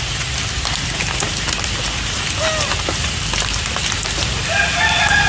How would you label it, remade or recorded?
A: recorded